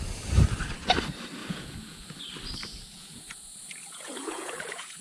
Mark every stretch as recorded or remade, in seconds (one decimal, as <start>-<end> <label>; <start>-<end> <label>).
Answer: 0.0-1.4 recorded; 1.4-2.2 remade; 2.2-2.6 recorded; 2.6-5.0 remade